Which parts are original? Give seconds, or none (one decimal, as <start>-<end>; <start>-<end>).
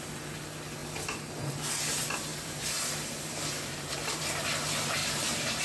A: 0.0-2.3; 4.2-5.0